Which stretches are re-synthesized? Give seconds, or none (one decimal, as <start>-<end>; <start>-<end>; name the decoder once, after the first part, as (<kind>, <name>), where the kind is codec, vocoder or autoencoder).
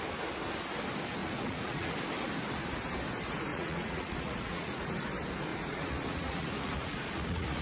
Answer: 1.2-1.9 (vocoder, Vocos); 3.5-4.9; 5.5-7.6